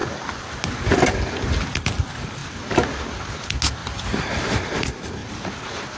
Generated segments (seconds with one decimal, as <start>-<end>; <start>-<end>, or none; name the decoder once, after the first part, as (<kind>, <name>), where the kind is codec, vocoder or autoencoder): none